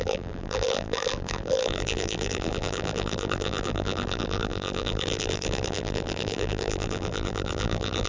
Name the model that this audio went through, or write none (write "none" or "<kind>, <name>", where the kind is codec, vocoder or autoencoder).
vocoder, BigVGAN v2